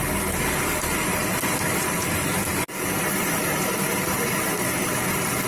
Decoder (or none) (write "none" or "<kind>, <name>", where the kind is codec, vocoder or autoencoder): none